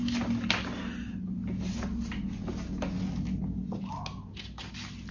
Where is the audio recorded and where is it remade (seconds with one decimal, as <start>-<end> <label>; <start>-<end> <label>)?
0.0-5.1 recorded